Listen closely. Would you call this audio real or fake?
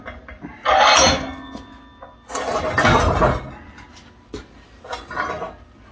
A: real